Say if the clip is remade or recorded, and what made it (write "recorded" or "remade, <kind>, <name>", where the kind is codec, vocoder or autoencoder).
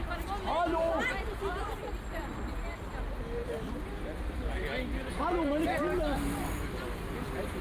recorded